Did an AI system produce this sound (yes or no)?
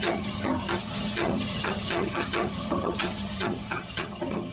yes